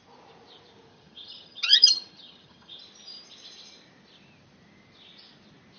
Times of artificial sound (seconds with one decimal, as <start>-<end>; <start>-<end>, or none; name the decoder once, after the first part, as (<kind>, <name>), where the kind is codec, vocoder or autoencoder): 0.9-2.8 (vocoder, HiFi-GAN)